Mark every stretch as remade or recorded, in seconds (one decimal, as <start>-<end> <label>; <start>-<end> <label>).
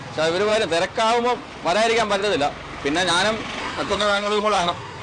0.0-3.6 recorded; 3.6-5.0 remade